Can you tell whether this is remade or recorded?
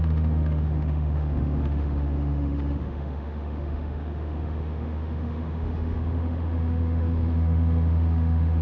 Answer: remade